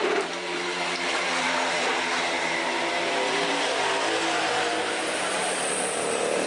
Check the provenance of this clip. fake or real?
fake